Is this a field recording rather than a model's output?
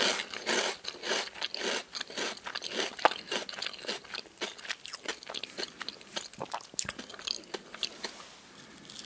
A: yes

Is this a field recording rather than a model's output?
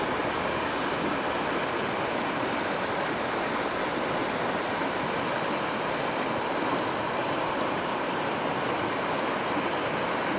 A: yes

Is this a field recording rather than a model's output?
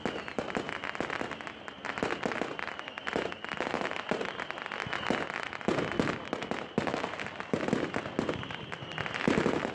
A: yes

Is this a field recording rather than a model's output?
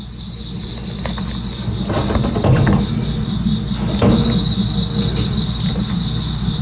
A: yes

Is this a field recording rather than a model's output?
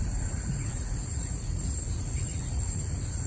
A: no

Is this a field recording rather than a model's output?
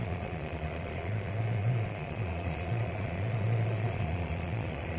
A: no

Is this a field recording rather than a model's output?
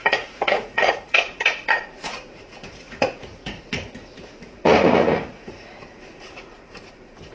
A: no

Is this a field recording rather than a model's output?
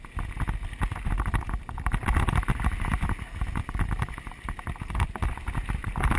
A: yes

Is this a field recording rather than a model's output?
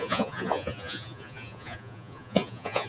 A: no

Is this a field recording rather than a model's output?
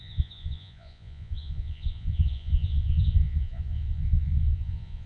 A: no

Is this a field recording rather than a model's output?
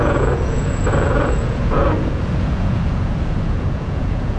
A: no